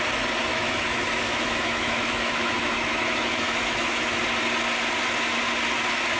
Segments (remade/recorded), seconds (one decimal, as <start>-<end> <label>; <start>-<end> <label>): 0.0-0.5 recorded; 0.5-4.2 remade; 4.2-6.2 recorded